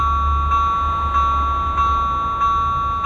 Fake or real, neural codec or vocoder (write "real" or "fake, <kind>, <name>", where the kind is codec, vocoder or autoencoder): real